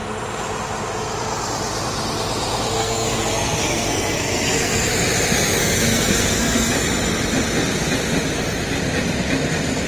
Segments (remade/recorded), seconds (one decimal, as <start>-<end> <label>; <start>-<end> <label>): 0.0-2.8 recorded; 2.8-4.9 remade; 4.9-5.6 recorded; 5.6-6.7 remade; 6.7-9.9 recorded